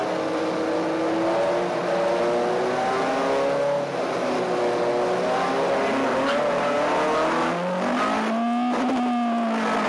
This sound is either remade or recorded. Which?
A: recorded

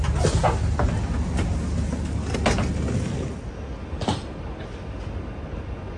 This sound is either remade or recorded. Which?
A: recorded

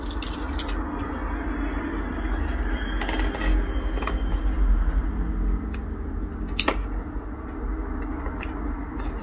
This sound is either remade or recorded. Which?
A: recorded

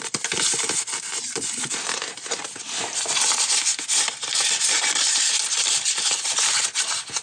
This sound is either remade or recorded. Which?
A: recorded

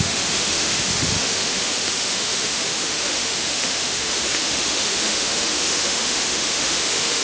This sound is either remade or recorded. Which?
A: remade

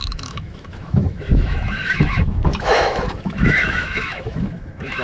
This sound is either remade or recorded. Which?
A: remade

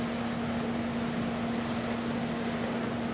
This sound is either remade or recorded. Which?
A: recorded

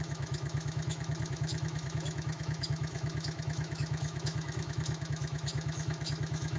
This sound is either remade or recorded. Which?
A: remade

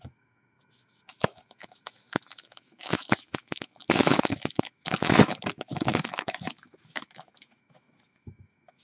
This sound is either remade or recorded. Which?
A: remade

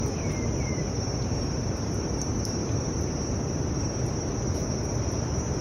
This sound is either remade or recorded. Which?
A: recorded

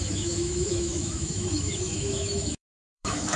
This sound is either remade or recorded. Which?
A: remade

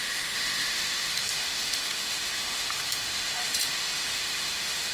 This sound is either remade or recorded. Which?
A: remade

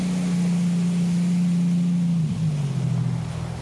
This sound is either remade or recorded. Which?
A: recorded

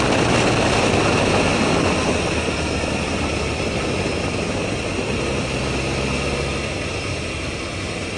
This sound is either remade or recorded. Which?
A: recorded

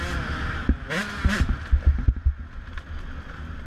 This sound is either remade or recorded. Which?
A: recorded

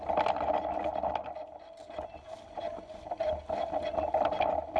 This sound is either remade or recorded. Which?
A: recorded